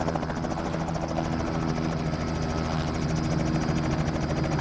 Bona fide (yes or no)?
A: yes